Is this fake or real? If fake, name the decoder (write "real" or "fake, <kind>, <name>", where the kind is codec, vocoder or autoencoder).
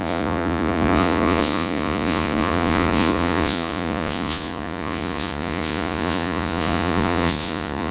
fake, vocoder, Vocos